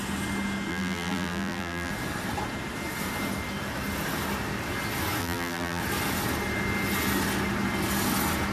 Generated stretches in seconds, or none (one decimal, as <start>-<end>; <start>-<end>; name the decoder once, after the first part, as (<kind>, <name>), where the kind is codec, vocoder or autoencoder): 0.7-1.9 (vocoder, BigVGAN v2); 5.2-5.8